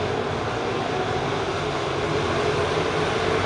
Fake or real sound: real